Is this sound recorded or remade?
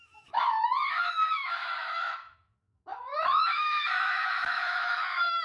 remade